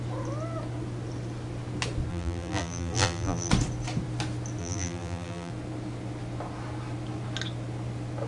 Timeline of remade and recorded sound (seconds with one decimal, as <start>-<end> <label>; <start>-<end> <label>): 0.0-2.1 recorded; 2.1-3.5 remade; 3.5-4.6 recorded; 4.6-5.5 remade; 5.5-8.3 recorded